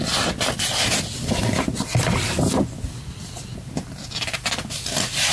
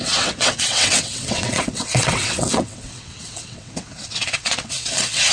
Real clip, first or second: first